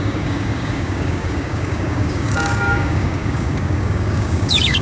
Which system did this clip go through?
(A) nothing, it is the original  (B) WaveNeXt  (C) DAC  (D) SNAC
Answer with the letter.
C